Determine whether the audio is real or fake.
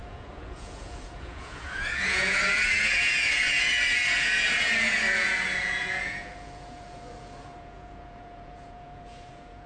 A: fake